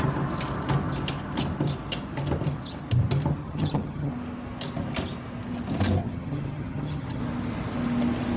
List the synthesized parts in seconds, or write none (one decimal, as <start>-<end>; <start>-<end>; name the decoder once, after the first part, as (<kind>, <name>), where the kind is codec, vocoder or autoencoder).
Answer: 3.4-4.1 (vocoder, HiFi-GAN); 6.0-7.2